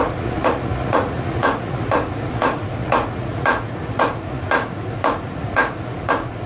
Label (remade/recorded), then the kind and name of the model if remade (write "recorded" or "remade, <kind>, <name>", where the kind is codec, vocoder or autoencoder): remade, vocoder, Vocos